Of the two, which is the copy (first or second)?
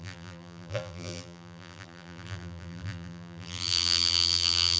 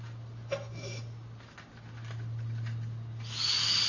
first